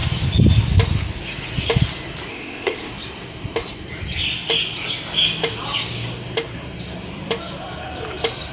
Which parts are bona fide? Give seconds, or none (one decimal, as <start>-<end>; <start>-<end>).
0.0-2.3; 2.9-8.5